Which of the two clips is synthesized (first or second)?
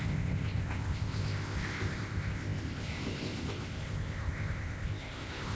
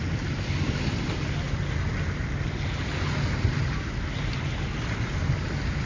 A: first